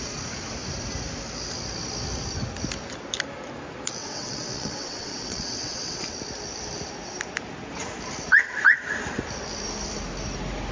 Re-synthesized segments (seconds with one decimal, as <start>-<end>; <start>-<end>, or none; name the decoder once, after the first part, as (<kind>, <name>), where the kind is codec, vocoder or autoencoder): 4.0-6.0 (vocoder, WaveNeXt)